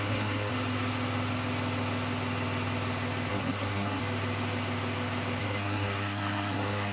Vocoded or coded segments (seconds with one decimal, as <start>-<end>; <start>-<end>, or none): 0.0-0.5; 3.3-4.0; 5.4-6.9